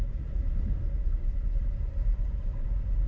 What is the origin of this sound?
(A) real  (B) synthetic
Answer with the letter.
B